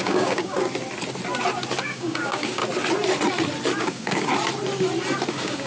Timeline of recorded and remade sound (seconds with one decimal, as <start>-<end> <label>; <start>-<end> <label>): 0.0-0.6 remade; 0.6-1.8 recorded; 1.8-2.6 remade; 2.6-3.8 recorded; 3.8-4.3 remade; 4.3-5.3 recorded; 5.3-5.7 remade

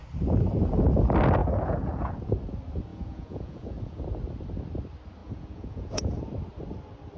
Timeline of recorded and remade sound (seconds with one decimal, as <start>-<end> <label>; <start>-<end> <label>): 0.0-1.4 recorded; 1.4-2.1 remade; 2.1-2.9 recorded; 2.9-4.0 remade; 4.0-5.2 recorded; 5.2-6.2 remade; 6.2-7.2 recorded

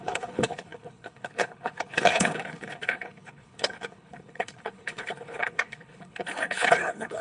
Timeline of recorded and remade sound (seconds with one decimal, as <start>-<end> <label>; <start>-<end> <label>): 0.0-7.2 remade